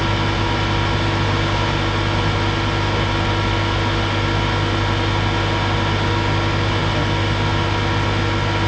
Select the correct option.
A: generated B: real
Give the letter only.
B